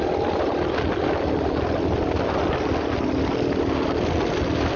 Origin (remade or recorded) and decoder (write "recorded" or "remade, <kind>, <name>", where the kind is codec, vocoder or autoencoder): recorded